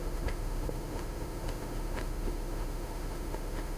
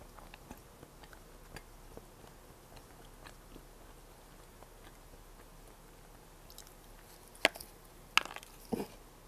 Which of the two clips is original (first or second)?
second